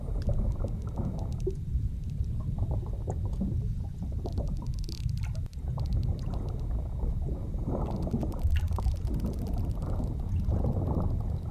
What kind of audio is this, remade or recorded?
recorded